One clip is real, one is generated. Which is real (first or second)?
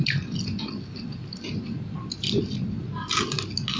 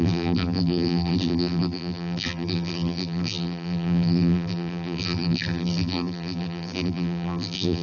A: first